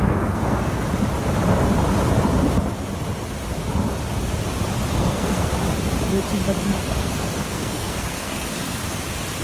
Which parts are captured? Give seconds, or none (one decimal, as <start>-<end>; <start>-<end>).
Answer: 0.8-4.9; 5.5-6.6; 8.8-9.4

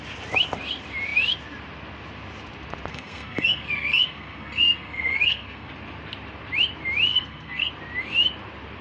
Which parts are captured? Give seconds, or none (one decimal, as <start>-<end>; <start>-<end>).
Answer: 0.0-2.9; 5.7-7.1; 7.7-8.8